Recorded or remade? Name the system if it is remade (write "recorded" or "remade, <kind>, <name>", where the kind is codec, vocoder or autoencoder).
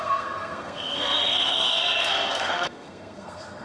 remade, codec, SNAC